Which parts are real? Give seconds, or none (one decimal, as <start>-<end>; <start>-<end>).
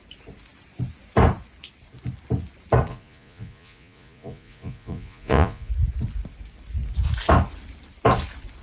0.0-2.9; 5.7-8.6